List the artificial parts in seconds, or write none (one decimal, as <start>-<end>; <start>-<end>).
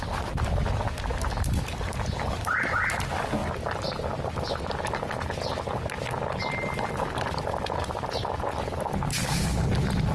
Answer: 1.1-2.4